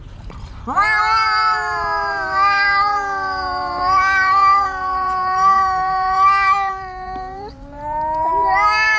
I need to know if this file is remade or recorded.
remade